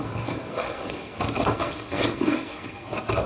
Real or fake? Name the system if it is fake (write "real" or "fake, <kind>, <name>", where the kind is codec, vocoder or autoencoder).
fake, codec, SNAC